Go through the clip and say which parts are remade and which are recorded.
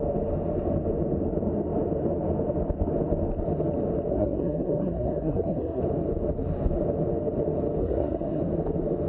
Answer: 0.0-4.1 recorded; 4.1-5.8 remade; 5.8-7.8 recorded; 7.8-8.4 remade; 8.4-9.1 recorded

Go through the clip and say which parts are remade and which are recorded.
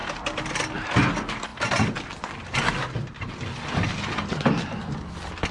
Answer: 0.0-5.5 recorded